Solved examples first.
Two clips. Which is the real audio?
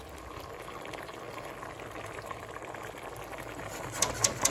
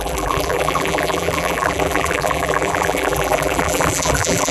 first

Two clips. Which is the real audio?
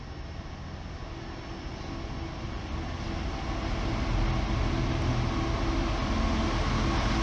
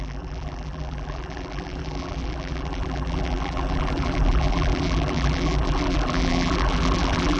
first